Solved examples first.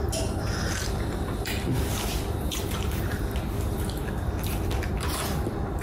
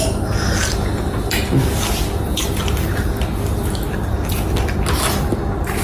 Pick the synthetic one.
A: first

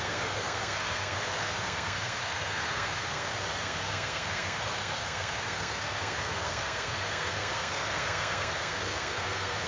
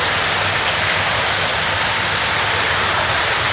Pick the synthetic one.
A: first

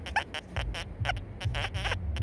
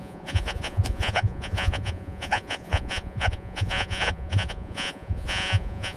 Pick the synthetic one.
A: second